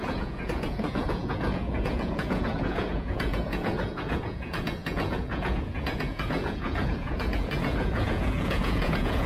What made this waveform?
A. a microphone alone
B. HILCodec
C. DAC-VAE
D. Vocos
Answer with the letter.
D